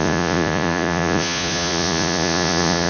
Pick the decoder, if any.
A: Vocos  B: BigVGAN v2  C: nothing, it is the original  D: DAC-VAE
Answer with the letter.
A